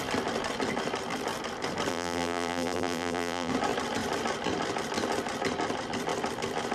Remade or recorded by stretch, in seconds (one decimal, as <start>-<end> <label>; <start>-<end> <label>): 0.0-1.9 recorded; 1.9-3.5 remade; 3.5-6.7 recorded